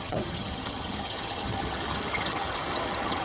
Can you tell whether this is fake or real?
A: fake